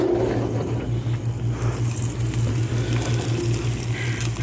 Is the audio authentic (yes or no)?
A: yes